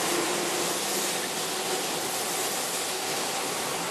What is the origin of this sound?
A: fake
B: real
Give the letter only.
B